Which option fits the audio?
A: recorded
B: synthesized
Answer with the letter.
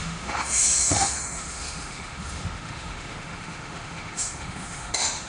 B